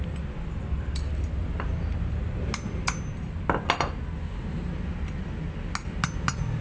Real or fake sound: real